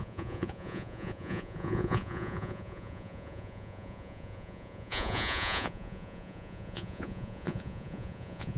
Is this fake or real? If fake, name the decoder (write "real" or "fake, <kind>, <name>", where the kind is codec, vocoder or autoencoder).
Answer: fake, vocoder, Vocos